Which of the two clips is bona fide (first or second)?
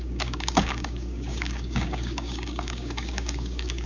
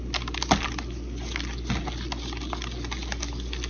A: second